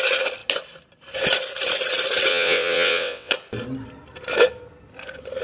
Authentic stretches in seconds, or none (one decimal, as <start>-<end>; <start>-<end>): 0.0-2.3; 3.3-5.4